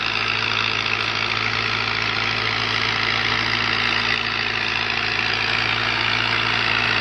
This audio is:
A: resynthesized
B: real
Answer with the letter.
B